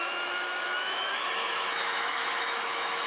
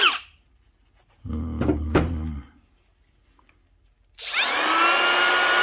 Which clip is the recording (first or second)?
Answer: second